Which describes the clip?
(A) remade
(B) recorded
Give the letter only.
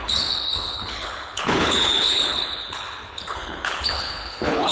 A